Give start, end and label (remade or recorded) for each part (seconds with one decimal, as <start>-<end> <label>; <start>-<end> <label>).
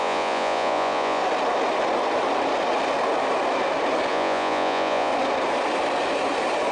0.0-1.2 remade; 1.2-4.1 recorded; 4.1-5.1 remade; 5.1-6.7 recorded